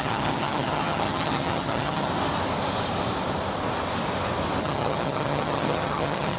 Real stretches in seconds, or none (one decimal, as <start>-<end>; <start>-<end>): 2.1-4.6